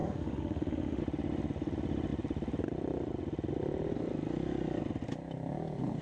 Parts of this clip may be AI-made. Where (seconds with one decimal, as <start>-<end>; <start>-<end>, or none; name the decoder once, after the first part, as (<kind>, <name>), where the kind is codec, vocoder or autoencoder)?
0.0-1.0 (autoencoder, DAC-VAE)